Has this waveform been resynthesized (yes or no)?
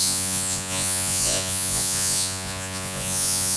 yes